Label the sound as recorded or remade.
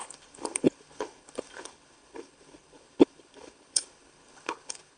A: remade